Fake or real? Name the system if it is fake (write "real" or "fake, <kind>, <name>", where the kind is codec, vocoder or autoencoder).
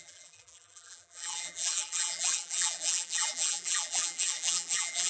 fake, vocoder, BigVGAN v2